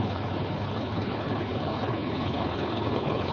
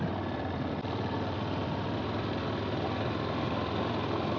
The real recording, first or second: second